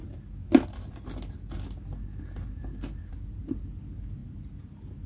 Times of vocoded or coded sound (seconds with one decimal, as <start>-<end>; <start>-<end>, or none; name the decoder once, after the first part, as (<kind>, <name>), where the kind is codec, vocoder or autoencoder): none